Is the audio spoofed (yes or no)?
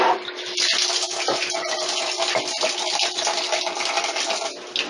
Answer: no